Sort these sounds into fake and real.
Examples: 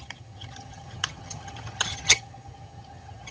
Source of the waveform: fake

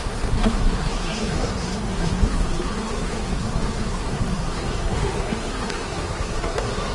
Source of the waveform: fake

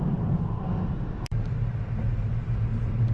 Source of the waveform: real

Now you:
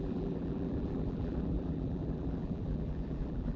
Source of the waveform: fake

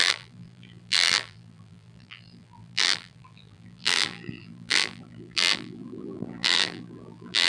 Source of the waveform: fake